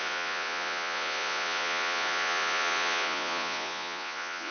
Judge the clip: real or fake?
fake